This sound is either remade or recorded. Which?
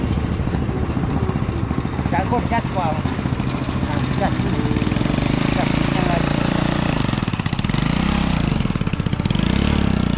recorded